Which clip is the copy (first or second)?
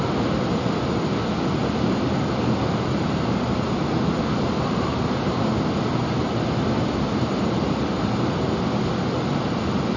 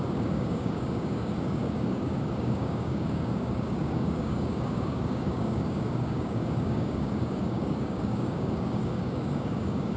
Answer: second